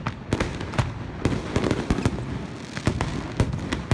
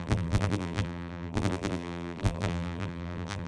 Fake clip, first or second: second